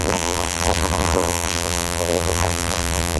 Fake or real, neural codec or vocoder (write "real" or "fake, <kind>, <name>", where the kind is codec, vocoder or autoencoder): fake, vocoder, BigVGAN v2